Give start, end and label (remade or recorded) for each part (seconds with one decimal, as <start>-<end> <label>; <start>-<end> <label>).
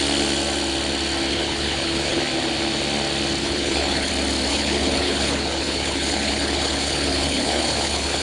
0.0-1.3 recorded; 1.3-2.2 remade; 2.2-3.4 recorded; 3.4-4.1 remade; 4.1-4.5 recorded; 4.5-8.2 remade